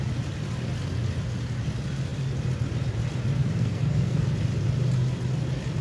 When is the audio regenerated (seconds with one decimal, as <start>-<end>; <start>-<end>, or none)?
3.4-4.3